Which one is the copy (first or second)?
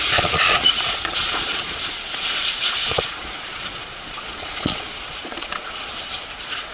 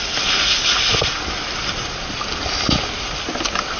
first